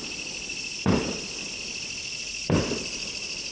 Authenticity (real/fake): real